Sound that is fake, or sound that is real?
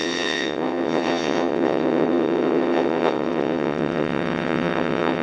fake